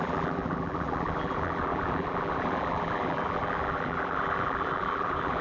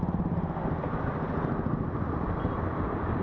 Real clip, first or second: second